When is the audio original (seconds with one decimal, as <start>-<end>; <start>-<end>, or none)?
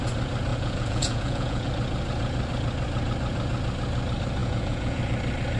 0.0-0.5; 1.7-4.4; 5.0-5.6